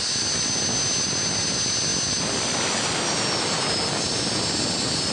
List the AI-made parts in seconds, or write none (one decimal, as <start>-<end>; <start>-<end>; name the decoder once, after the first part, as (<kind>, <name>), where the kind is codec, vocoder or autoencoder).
none